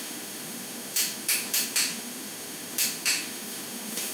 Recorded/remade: remade